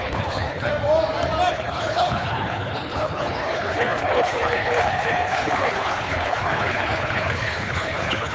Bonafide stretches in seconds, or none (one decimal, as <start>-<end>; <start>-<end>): 0.7-1.5